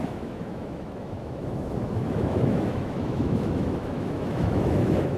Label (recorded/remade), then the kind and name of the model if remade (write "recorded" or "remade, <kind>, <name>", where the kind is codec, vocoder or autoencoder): remade, autoencoder, DAC-VAE